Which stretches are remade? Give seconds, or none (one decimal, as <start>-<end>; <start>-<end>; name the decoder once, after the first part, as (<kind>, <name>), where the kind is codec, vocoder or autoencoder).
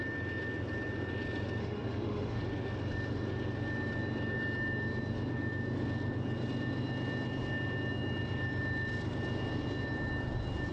1.6-2.4 (autoencoder, DAC-VAE)